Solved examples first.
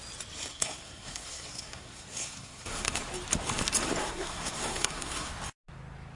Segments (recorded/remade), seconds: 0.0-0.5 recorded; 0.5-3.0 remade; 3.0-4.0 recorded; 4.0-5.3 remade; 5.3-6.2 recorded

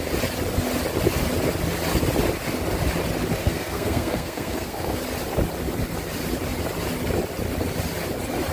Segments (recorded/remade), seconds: 0.0-3.4 recorded; 3.4-5.0 remade; 5.0-8.5 recorded

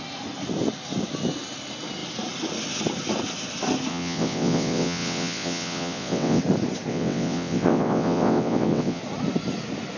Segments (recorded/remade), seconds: 0.0-3.9 recorded; 3.9-6.4 remade; 6.4-6.9 recorded; 6.9-9.0 remade; 9.0-10.0 recorded

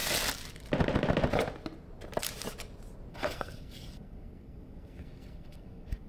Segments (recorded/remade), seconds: 0.0-3.1 recorded; 3.1-6.1 remade